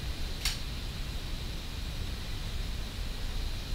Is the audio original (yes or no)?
yes